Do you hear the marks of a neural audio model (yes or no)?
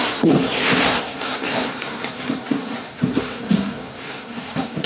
yes